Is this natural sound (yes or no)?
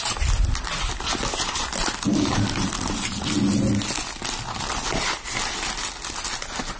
yes